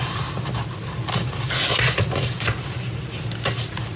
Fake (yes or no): no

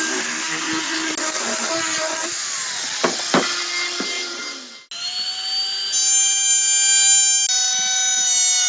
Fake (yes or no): no